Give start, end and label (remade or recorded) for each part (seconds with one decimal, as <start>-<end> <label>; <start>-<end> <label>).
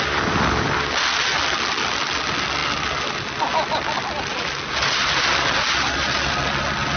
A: 0.0-7.0 recorded